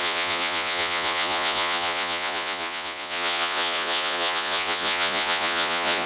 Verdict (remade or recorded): remade